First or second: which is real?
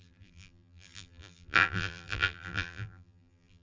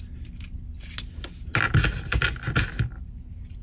second